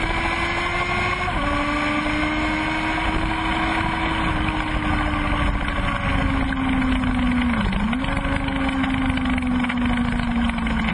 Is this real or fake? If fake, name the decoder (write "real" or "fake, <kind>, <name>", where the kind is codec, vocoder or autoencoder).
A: real